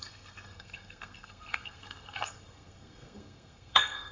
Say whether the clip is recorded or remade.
remade